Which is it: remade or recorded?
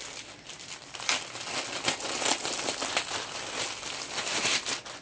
recorded